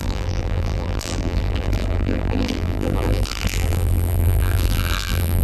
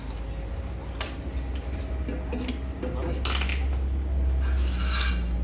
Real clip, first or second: second